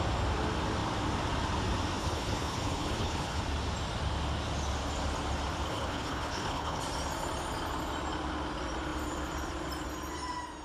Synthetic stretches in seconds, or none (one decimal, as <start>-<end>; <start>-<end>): 2.0-3.4; 5.7-6.8